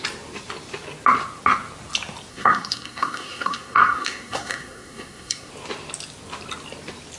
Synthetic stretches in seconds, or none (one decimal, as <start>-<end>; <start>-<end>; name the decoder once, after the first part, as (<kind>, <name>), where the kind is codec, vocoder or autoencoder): 2.3-5.5 (codec, SNAC)